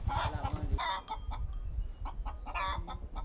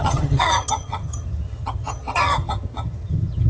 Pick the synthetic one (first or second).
second